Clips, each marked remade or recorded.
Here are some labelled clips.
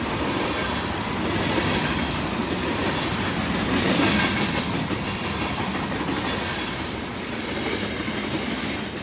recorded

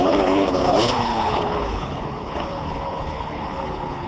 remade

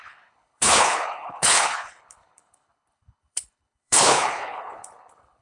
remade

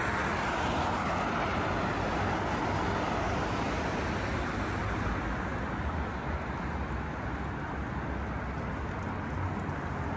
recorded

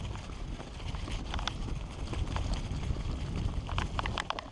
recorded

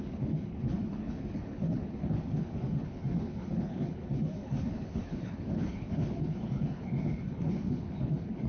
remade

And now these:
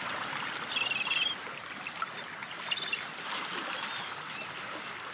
recorded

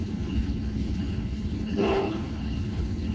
remade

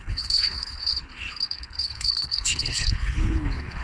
remade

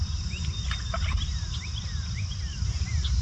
recorded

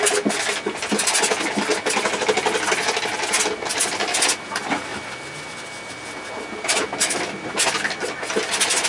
recorded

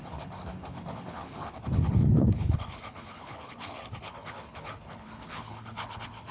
remade